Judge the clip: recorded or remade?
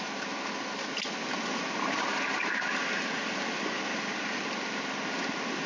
recorded